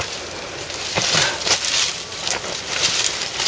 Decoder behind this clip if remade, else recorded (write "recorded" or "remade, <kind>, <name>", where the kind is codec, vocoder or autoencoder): recorded